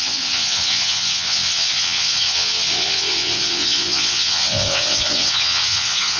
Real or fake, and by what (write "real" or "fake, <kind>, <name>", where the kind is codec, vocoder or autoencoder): fake, vocoder, WaveNeXt